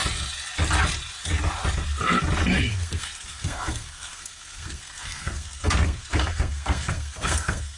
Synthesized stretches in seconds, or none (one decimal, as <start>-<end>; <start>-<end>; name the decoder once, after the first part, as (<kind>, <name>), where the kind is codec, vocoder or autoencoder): 2.7-7.8 (codec, SNAC)